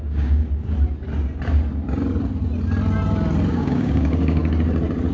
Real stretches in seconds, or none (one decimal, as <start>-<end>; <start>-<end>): 0.4-3.5; 4.4-5.1